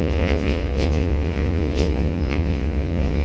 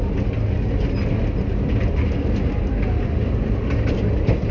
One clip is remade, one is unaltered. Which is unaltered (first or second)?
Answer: second